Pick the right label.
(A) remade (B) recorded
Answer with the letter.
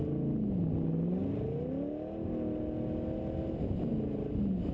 B